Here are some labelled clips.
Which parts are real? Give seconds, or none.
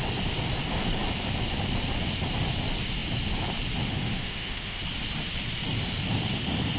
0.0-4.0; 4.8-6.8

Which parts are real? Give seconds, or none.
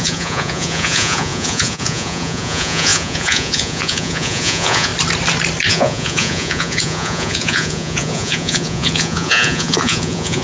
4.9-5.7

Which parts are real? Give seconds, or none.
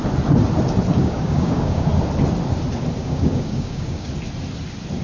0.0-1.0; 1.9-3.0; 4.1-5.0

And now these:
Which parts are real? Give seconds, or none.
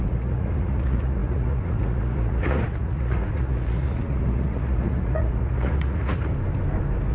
6.3-7.1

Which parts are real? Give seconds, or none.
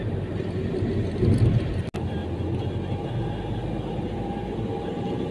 0.0-5.3